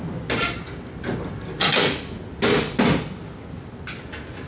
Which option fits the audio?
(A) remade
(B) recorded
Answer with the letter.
B